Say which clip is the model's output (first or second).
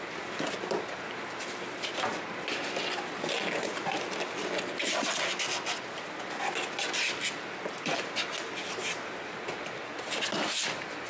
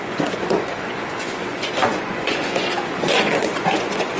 second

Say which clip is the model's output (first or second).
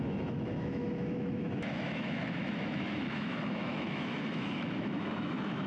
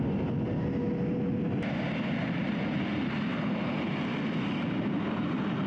first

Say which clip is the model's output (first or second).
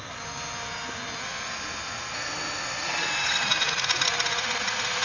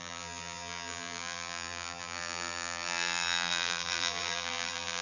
second